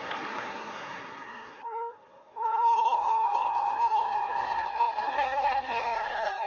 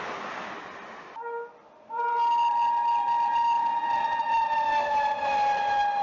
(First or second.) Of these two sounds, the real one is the second